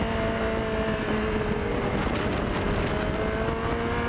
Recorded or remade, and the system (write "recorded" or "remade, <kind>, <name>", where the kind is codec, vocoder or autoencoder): recorded